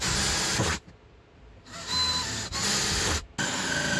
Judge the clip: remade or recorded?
recorded